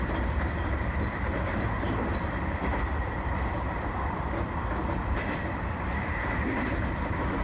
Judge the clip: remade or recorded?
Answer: remade